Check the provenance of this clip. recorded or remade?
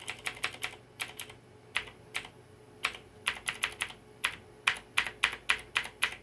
recorded